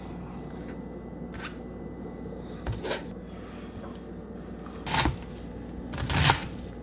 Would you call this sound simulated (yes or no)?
no